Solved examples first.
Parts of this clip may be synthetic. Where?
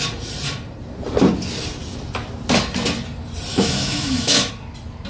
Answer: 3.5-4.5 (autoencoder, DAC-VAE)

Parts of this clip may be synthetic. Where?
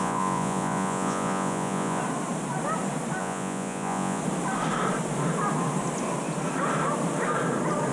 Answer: 0.0-2.0 (vocoder, Vocos); 3.2-4.2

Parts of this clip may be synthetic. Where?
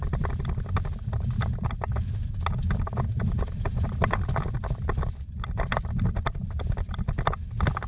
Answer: none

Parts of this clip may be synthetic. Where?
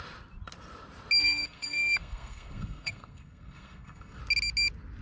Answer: 1.2-4.2 (codec, SNAC)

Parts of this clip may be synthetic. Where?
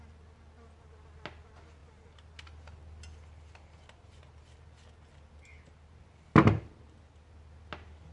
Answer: none